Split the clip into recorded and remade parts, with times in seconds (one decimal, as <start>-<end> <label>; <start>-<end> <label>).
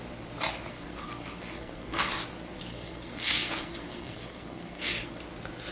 0.0-0.7 recorded; 0.7-2.1 remade; 2.1-2.7 recorded; 2.7-5.2 remade; 5.2-5.7 recorded